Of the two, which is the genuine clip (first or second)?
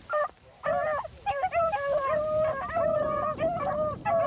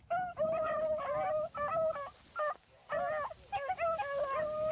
second